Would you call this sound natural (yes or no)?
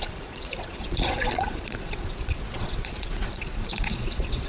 no